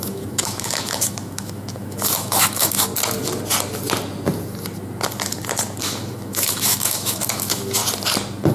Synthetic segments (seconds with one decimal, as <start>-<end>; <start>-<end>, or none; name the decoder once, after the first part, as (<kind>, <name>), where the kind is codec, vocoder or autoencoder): 0.0-2.9 (autoencoder, DAC-VAE); 5.8-7.8